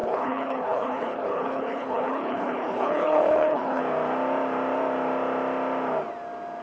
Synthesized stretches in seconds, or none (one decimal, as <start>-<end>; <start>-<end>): 0.0-3.8